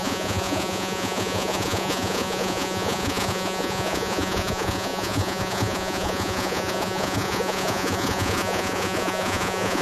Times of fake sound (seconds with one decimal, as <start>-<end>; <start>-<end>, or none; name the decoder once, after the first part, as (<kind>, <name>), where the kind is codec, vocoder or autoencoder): 0.0-9.8 (vocoder, Vocos)